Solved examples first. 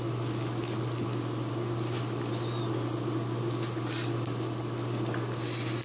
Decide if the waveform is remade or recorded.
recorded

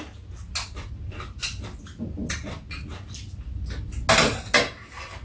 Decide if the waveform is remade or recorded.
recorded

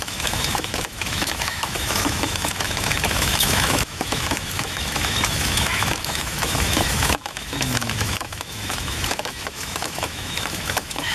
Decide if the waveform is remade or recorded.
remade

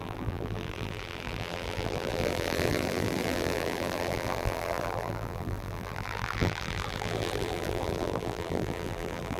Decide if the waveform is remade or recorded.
remade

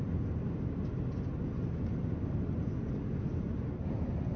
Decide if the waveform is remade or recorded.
recorded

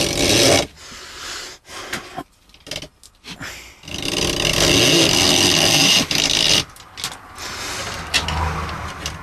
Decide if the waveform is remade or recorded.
recorded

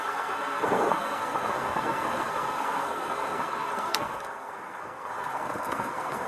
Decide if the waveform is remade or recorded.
remade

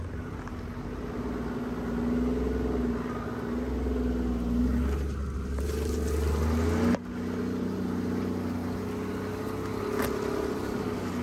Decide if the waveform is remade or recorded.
recorded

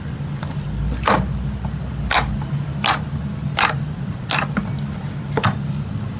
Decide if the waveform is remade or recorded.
recorded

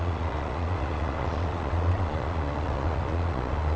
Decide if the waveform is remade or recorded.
remade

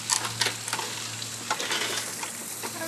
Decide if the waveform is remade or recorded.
recorded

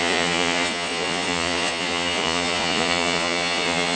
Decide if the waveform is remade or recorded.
remade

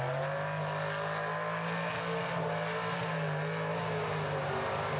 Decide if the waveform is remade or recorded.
recorded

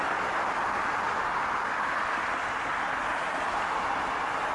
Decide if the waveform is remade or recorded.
recorded